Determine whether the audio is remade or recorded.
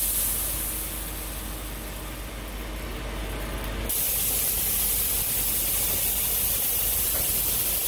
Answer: recorded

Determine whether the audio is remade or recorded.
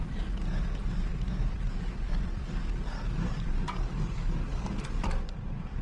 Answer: recorded